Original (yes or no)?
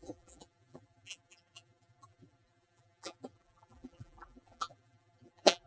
no